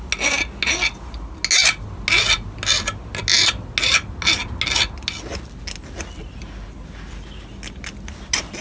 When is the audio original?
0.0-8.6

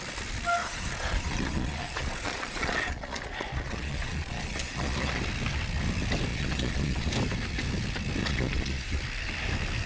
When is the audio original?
0.0-0.6; 5.2-6.3; 7.1-8.2; 9.0-9.9

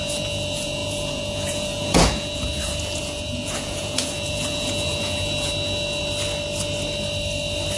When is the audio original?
5.5-7.8